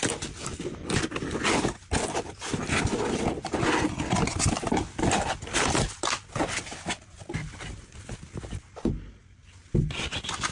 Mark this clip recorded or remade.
recorded